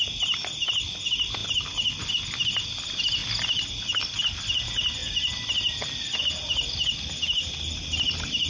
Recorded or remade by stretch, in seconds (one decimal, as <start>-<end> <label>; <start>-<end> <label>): 0.0-8.5 recorded